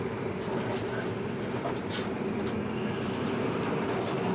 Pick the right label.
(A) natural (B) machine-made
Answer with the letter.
A